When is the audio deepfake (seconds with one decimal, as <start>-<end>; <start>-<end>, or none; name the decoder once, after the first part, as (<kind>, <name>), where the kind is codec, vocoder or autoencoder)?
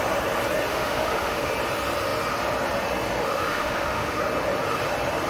0.7-1.5 (autoencoder, DAC-VAE); 3.2-4.2